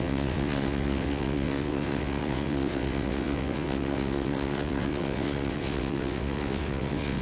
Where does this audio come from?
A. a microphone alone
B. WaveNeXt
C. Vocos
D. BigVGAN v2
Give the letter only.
B